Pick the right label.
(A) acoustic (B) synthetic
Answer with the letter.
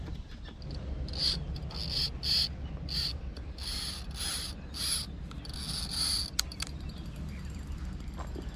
A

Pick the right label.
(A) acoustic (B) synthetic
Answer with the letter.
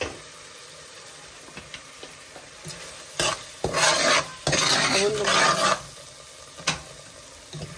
A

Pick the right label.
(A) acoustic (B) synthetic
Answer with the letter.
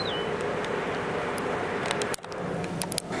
A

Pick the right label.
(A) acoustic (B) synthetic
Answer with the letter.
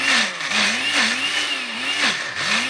A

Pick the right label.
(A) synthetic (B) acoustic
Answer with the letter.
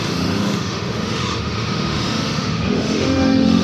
A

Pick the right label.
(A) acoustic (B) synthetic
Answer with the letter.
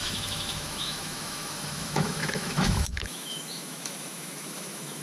B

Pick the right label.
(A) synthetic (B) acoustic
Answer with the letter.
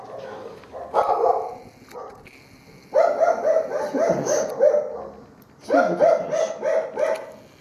B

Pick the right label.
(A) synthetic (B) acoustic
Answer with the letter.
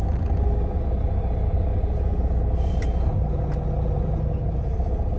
B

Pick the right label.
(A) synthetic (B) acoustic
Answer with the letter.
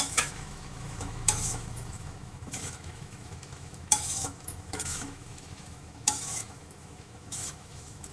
A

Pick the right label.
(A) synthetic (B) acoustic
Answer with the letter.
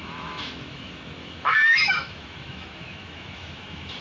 A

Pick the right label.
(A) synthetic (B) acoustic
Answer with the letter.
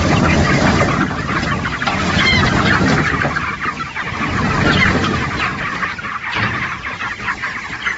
B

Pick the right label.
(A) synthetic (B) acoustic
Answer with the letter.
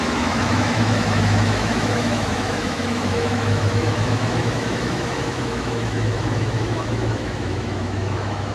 A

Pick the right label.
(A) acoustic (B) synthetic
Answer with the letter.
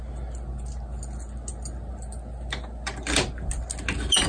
A